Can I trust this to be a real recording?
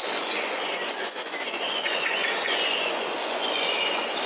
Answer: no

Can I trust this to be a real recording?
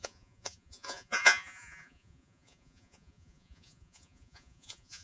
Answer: no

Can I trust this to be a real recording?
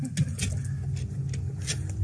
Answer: yes